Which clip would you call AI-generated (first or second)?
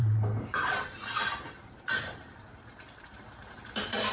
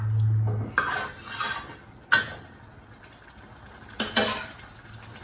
first